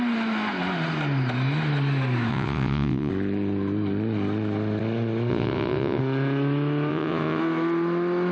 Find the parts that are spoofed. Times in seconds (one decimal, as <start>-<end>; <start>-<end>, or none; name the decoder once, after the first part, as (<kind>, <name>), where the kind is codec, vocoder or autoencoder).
2.3-3.1 (vocoder, WaveNeXt); 5.3-6.0; 6.9-7.4

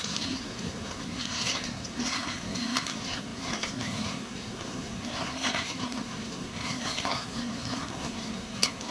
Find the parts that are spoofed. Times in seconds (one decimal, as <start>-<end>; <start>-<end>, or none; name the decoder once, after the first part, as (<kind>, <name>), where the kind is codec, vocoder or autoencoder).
0.0-8.9 (codec, SNAC)

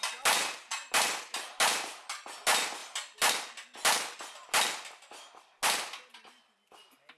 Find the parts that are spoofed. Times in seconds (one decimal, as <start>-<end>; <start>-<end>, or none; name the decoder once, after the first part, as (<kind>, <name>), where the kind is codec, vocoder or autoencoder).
none